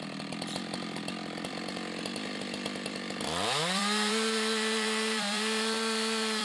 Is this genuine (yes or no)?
no